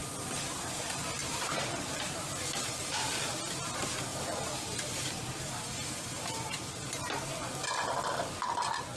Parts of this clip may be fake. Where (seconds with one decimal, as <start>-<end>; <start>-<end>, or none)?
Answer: 1.2-3.3; 4.1-6.8